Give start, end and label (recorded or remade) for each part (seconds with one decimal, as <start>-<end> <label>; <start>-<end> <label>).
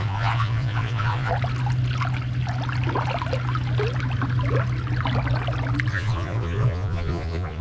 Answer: 0.0-1.3 remade; 1.3-5.9 recorded; 5.9-7.6 remade